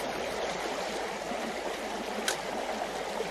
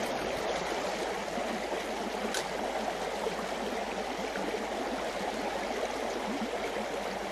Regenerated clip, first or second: first